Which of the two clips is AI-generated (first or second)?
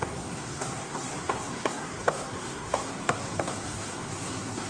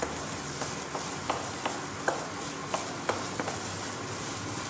first